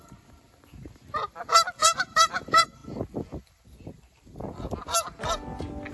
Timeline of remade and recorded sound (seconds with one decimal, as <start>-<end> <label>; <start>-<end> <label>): 0.0-4.8 remade; 4.8-5.9 recorded